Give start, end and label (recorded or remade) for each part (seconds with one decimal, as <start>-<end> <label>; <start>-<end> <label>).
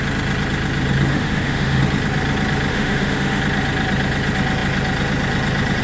0.0-1.1 recorded; 1.1-1.8 remade; 1.8-2.7 recorded; 2.7-3.4 remade; 3.4-5.8 recorded